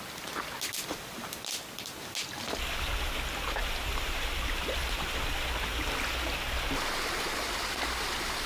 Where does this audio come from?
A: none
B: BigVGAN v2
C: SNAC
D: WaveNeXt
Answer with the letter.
A